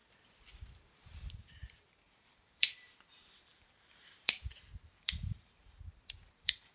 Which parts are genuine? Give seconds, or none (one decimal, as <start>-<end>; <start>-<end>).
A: 0.0-0.8